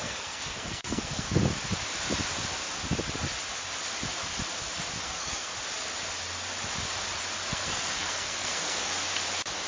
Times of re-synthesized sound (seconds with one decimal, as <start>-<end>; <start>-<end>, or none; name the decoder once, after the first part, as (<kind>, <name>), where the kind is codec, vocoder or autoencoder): 0.0-1.4 (codec, SNAC); 5.0-5.5; 7.5-8.9